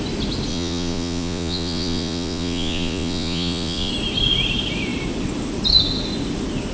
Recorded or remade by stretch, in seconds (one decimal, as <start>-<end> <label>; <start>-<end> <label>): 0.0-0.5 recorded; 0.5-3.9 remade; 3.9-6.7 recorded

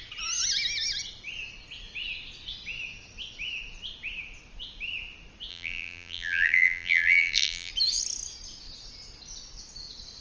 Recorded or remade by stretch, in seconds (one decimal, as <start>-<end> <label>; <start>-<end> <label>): 0.0-5.5 recorded; 5.5-7.7 remade; 7.7-10.2 recorded

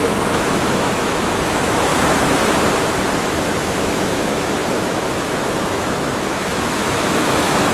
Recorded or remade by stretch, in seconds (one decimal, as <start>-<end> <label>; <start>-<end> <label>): 0.0-1.9 remade; 1.9-3.2 recorded; 3.2-7.7 remade